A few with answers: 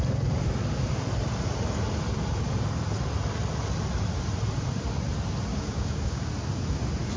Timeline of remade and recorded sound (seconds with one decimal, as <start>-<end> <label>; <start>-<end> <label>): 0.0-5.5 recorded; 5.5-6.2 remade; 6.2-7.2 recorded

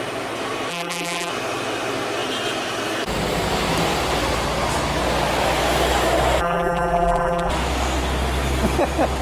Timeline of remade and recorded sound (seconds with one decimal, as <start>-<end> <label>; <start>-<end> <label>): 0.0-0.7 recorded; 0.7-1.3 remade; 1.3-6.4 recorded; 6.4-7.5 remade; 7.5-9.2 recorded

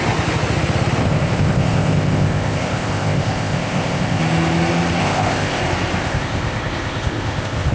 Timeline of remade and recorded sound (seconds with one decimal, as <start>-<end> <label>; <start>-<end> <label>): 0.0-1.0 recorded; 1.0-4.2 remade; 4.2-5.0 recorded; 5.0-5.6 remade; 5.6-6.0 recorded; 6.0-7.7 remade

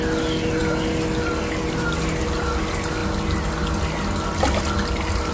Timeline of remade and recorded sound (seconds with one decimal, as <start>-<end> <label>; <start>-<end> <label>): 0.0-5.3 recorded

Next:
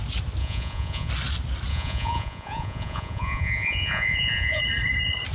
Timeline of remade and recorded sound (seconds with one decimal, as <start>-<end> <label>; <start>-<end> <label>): 0.0-0.4 recorded; 0.4-1.1 remade; 1.1-1.7 recorded; 1.7-4.6 remade; 4.6-5.3 recorded

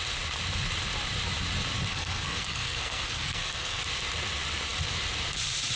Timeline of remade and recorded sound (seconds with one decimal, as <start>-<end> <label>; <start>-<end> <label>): 0.0-1.9 recorded; 1.9-3.8 remade; 3.8-5.8 recorded

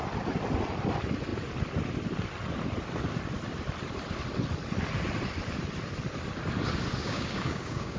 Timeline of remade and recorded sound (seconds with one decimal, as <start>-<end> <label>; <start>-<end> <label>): 0.0-7.0 recorded; 7.0-8.0 remade

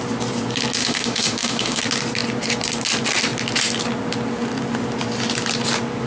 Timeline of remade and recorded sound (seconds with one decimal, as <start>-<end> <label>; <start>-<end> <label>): 0.0-0.8 recorded; 0.8-1.8 remade; 1.8-6.1 recorded